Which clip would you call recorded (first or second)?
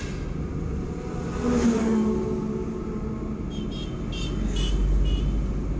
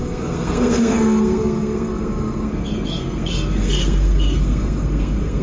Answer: first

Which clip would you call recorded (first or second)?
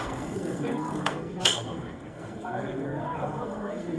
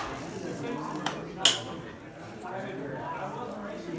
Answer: second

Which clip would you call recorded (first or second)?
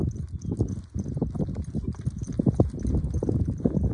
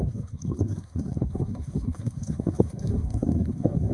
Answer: first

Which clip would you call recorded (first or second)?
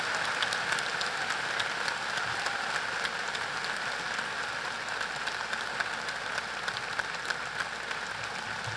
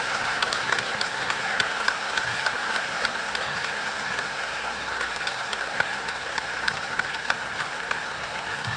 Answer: first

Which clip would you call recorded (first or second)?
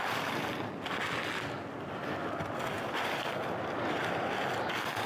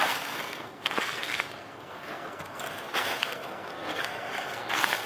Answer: first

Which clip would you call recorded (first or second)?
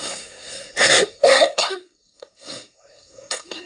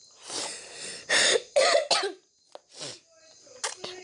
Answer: second